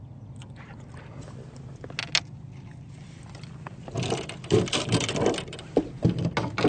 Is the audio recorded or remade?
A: recorded